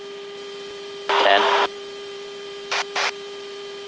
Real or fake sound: fake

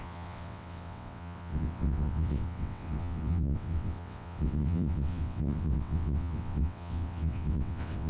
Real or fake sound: fake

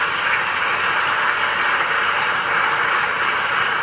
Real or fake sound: real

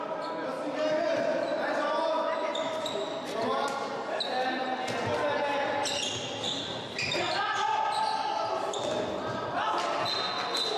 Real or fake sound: real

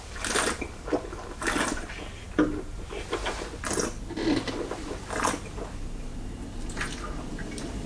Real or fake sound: real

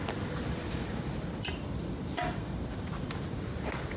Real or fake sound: real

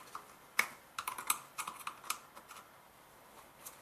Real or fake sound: real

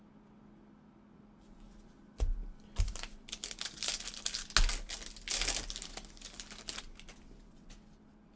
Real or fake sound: real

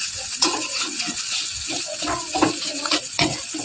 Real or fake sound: fake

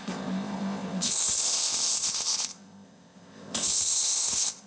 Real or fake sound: fake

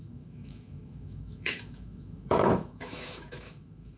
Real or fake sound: fake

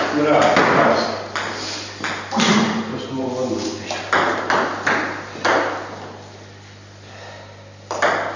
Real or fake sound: real